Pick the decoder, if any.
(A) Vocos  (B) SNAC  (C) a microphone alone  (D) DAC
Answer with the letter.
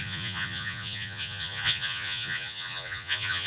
A